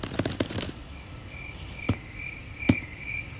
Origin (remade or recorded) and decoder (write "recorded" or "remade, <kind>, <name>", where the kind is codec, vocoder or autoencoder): recorded